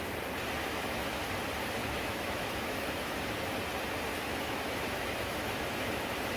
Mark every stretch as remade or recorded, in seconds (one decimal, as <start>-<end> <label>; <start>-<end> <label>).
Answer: 0.0-0.6 recorded; 0.6-1.2 remade; 1.2-1.8 recorded; 1.8-3.2 remade; 3.2-4.1 recorded; 4.1-6.0 remade; 6.0-6.4 recorded